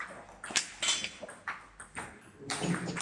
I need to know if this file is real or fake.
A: real